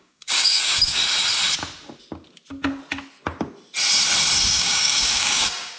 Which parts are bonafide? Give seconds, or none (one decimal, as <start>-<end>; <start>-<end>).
1.0-4.5